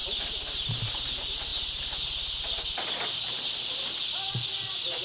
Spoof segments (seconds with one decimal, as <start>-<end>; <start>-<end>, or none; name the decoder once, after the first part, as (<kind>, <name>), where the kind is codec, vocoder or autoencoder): 0.8-1.5 (vocoder, BigVGAN v2); 3.0-4.0